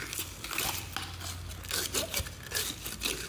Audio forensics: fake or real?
real